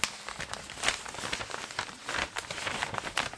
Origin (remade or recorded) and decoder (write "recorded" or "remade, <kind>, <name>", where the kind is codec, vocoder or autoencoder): recorded